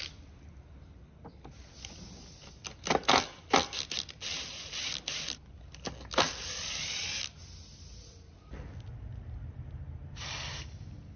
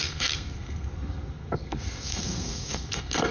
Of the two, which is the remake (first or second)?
second